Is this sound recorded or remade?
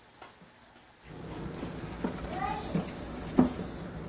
recorded